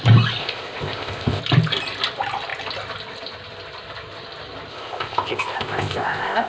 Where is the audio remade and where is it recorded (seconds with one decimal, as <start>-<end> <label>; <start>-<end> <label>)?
0.0-0.4 recorded; 0.4-1.4 remade; 1.4-4.7 recorded; 4.7-6.5 remade